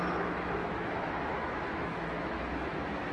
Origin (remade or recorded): remade